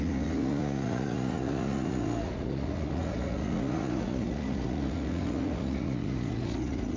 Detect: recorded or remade remade